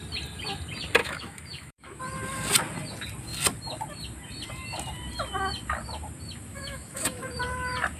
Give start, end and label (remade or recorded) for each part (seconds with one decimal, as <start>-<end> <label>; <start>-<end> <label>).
0.0-1.0 recorded; 1.0-2.0 remade; 2.0-6.5 recorded; 6.5-7.3 remade; 7.3-8.0 recorded